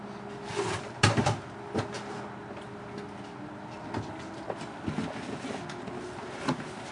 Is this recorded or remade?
recorded